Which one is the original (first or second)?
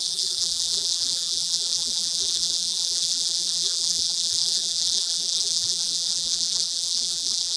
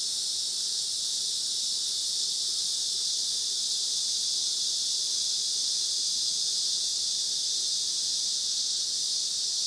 second